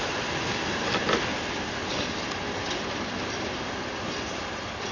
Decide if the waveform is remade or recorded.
recorded